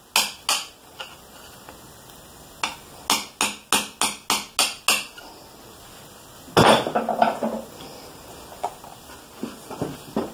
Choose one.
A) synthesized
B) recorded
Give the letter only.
B